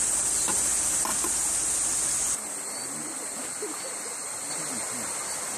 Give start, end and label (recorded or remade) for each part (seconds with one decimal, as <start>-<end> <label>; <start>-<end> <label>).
0.0-5.6 recorded